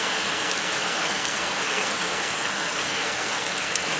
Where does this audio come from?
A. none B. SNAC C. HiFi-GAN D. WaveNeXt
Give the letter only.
B